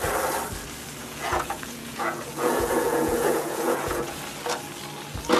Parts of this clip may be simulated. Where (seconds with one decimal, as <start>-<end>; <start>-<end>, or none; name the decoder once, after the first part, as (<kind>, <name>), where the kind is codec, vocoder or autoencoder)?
1.0-4.2 (vocoder, Vocos)